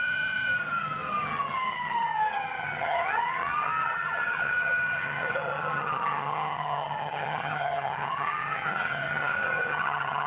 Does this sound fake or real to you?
fake